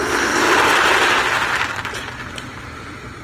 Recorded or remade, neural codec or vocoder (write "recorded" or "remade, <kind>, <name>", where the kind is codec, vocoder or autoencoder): recorded